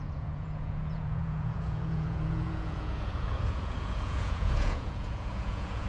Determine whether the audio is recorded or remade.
remade